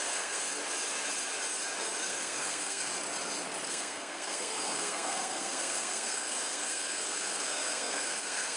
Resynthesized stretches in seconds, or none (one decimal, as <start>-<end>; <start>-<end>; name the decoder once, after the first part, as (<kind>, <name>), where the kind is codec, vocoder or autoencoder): 0.0-0.6 (codec, SNAC); 2.0-2.9; 3.7-8.6